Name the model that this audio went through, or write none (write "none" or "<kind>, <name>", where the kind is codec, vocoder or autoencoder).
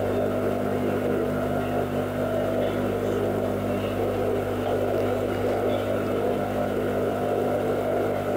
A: none